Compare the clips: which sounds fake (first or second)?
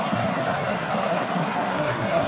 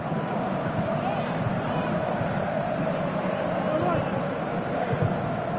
first